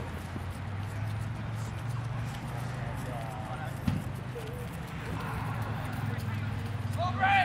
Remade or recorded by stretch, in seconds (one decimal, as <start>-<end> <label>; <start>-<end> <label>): 0.0-7.4 recorded